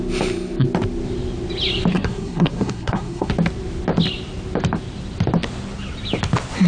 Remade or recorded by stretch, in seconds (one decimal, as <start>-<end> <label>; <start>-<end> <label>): 0.0-1.9 recorded; 1.9-3.3 remade; 3.3-6.7 recorded

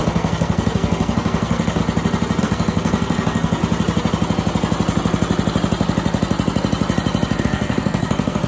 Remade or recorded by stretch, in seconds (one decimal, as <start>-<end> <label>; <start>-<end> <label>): 0.0-1.8 remade; 1.8-2.4 recorded; 2.4-3.6 remade; 3.6-7.4 recorded; 7.4-8.5 remade